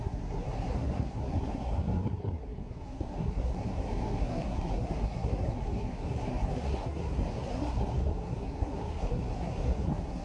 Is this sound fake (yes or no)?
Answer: yes